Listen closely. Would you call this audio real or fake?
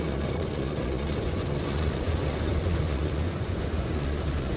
fake